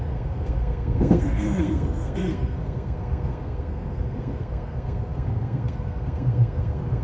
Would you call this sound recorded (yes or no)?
no